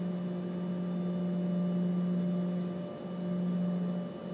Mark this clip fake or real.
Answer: real